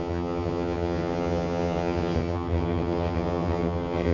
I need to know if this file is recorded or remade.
remade